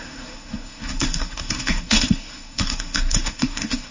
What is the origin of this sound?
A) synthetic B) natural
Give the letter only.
A